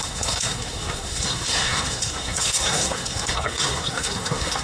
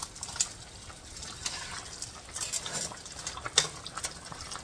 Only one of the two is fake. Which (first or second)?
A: first